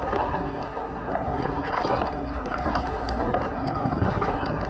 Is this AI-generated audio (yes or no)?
yes